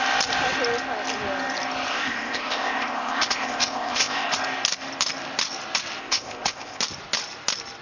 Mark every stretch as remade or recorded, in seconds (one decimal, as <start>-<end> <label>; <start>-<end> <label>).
0.0-1.9 recorded; 1.9-4.3 remade; 4.3-6.0 recorded; 6.0-6.8 remade; 6.8-7.8 recorded